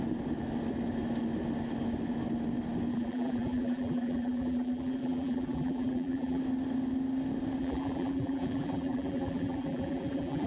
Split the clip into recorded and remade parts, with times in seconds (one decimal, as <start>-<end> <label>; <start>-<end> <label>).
0.0-2.9 recorded; 2.9-6.4 remade; 6.4-7.6 recorded; 7.6-10.5 remade